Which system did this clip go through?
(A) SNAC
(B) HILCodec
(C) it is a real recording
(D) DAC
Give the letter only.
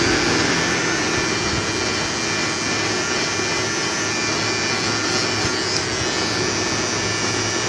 C